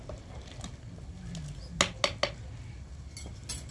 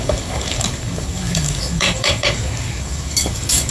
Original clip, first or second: first